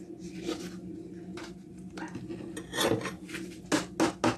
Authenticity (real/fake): real